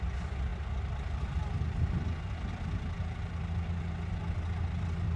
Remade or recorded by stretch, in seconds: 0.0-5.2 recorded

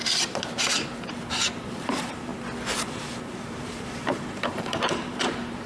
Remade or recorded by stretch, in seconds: 0.0-2.3 remade; 2.3-2.8 recorded; 2.8-5.7 remade

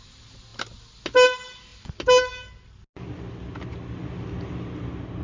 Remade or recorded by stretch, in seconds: 0.0-5.2 recorded

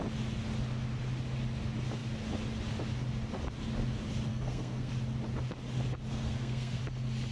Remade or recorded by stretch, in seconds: 0.0-4.3 recorded; 4.3-4.9 remade; 4.9-6.1 recorded; 6.1-6.8 remade; 6.8-7.3 recorded

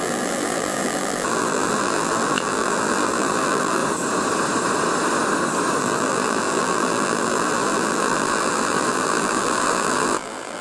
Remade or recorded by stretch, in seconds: 0.0-3.8 remade; 3.8-5.8 recorded; 5.8-10.6 remade